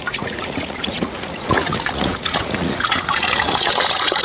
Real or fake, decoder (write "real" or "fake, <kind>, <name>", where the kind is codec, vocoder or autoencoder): fake, vocoder, Vocos